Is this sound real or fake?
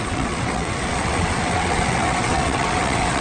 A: fake